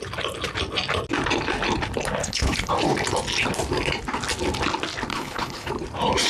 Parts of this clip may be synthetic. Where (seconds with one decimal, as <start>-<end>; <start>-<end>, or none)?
2.2-2.7; 5.1-5.7